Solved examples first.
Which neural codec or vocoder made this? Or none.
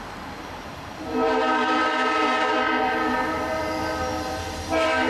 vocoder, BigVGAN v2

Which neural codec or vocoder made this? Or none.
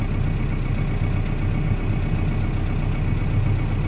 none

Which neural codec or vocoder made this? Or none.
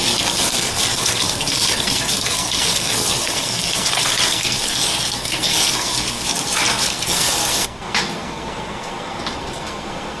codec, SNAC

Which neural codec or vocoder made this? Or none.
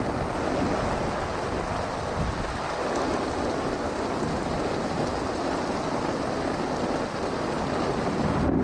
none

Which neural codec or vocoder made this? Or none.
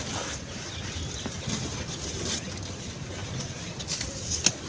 none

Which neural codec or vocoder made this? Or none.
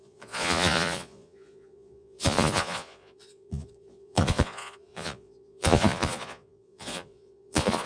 vocoder, Vocos